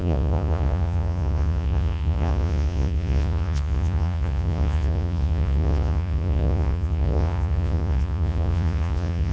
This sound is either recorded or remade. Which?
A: remade